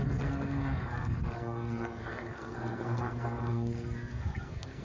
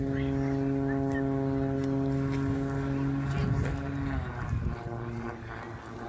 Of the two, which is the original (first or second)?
second